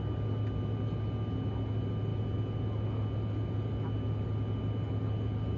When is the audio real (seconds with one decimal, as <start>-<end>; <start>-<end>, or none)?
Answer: 0.0-5.6